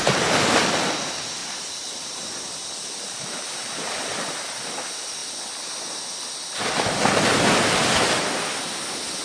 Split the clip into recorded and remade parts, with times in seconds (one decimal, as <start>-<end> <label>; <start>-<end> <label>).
0.0-1.4 recorded; 1.4-2.4 remade; 2.4-9.2 recorded